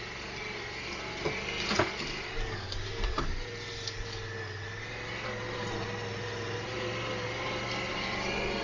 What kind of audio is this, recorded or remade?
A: recorded